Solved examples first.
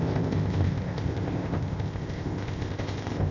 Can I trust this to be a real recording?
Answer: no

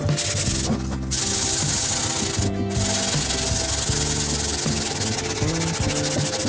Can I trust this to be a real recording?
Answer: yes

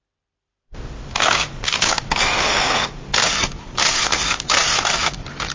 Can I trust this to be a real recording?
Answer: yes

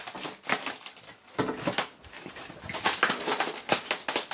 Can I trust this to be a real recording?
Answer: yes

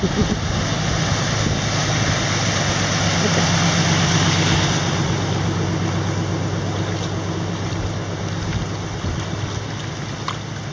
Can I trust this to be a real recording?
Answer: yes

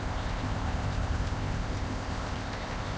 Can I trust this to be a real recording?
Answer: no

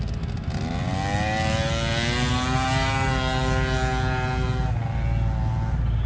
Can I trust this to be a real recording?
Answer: yes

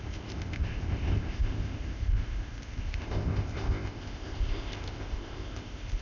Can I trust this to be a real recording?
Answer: no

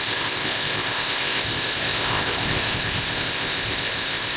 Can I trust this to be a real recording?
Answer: no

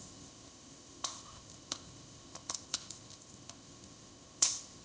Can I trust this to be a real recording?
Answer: no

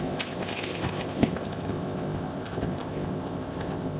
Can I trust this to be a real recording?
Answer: no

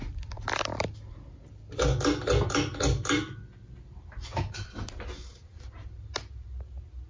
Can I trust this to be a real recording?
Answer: yes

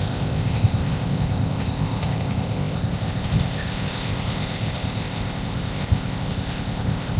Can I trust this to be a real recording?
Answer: no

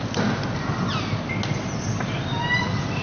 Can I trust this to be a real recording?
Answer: yes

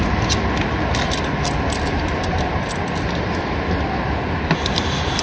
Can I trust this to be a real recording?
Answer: yes